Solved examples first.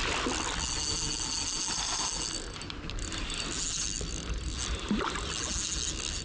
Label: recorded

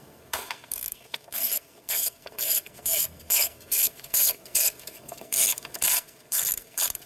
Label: remade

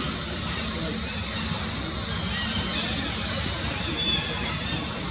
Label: recorded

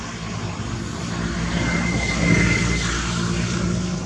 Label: recorded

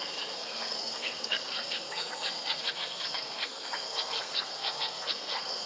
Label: remade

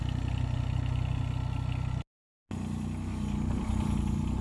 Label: recorded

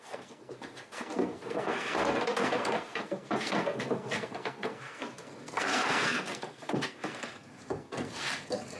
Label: remade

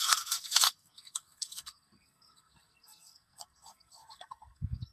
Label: remade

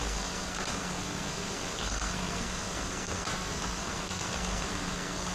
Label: remade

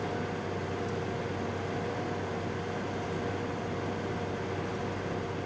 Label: recorded